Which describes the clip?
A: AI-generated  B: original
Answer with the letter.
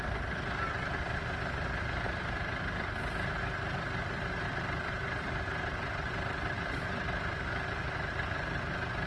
A